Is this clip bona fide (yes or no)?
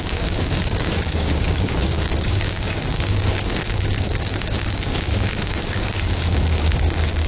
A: no